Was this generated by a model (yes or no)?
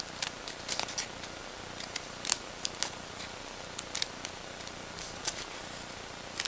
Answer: no